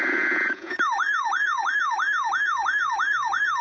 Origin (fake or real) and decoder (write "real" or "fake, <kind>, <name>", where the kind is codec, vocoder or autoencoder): fake, vocoder, Vocos